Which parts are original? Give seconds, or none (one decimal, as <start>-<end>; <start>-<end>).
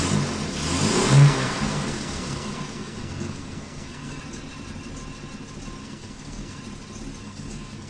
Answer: 0.0-1.0; 4.2-5.8; 6.6-7.2